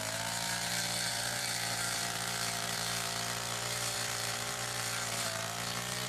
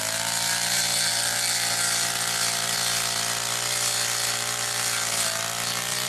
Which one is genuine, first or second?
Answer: second